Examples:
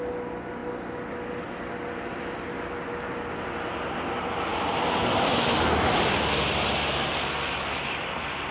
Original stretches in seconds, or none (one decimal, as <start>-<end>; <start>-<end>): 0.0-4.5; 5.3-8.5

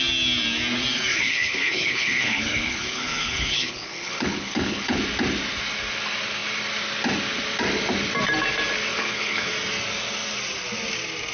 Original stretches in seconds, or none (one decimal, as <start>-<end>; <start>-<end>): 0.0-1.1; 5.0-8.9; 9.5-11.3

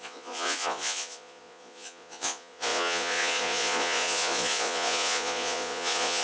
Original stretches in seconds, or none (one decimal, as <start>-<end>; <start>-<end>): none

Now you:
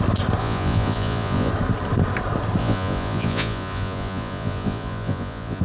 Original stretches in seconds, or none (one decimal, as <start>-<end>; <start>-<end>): 0.0-0.4; 1.5-2.6

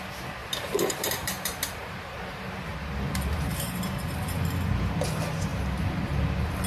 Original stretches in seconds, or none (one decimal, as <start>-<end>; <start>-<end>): 0.0-0.4; 3.8-6.7

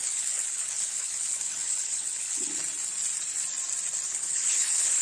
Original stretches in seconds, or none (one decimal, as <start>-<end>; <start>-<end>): 2.6-4.1